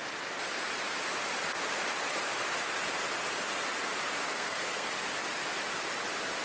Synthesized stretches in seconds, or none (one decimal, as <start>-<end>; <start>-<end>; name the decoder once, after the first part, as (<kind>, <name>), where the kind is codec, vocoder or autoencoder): 4.3-4.9 (codec, SNAC)